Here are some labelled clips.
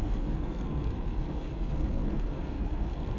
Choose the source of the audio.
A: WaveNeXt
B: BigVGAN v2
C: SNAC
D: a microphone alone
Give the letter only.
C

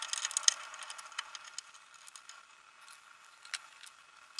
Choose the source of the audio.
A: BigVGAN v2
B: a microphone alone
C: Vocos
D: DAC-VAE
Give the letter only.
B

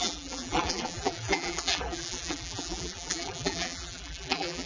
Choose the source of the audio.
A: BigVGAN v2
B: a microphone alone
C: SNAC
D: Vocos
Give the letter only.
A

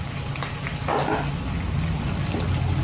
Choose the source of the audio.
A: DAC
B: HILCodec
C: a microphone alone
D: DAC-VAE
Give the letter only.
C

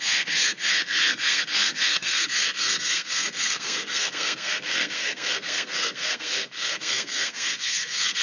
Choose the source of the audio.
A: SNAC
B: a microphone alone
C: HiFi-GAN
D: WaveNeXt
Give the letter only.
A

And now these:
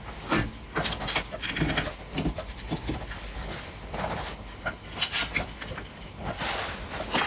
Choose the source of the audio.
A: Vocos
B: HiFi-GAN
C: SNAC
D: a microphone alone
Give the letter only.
D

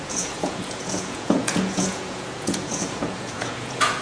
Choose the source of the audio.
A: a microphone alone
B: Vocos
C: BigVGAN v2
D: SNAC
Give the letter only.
B